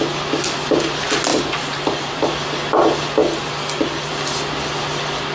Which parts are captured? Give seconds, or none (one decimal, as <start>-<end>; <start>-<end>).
0.0-1.3; 2.3-5.3